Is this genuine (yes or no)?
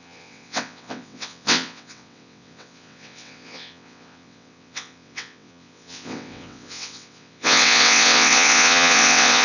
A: no